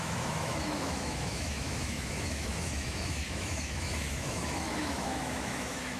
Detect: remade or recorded remade